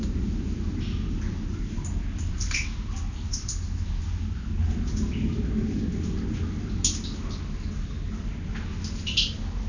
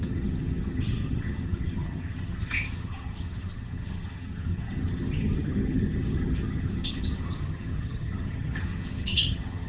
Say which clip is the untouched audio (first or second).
first